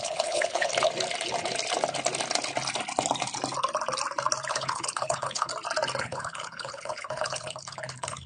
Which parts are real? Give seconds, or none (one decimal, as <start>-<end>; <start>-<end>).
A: 0.7-4.5; 5.5-6.0